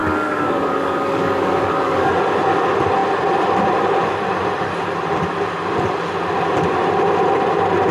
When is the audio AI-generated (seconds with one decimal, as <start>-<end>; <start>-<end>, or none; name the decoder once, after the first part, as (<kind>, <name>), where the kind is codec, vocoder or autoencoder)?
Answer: 0.0-2.1 (codec, DAC)